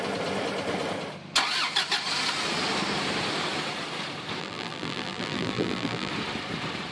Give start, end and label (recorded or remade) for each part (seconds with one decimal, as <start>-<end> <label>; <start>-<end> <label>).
0.0-4.4 recorded; 4.4-6.1 remade; 6.1-6.9 recorded